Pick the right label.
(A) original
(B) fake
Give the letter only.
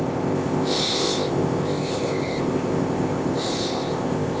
B